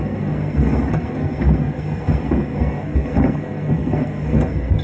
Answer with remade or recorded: remade